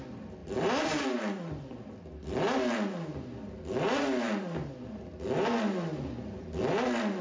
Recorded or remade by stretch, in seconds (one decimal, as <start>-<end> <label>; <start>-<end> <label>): 0.0-0.4 recorded; 0.4-1.2 remade; 1.2-7.2 recorded